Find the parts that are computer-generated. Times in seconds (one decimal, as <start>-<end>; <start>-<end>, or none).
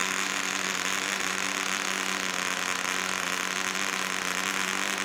0.0-1.5